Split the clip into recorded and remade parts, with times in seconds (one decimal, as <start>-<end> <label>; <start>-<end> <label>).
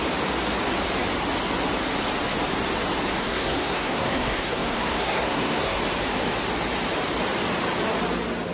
0.0-3.2 recorded; 3.2-5.8 remade; 5.8-8.5 recorded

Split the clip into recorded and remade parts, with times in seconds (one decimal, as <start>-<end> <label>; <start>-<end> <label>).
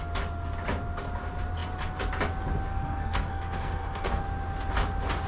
0.0-2.7 recorded; 2.7-4.2 remade; 4.2-5.3 recorded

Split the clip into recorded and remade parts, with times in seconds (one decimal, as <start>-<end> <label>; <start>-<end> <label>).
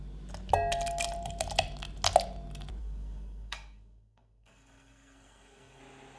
0.0-2.8 recorded; 2.8-5.8 remade; 5.8-6.2 recorded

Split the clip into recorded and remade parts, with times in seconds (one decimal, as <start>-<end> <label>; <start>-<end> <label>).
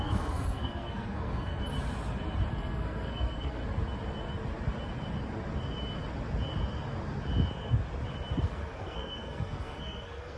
0.0-1.6 remade; 1.6-2.5 recorded; 2.5-3.6 remade; 3.6-8.4 recorded; 8.4-10.4 remade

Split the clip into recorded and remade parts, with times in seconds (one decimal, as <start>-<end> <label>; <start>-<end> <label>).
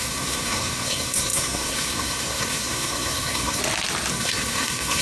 0.0-3.6 remade; 3.6-4.1 recorded; 4.1-5.0 remade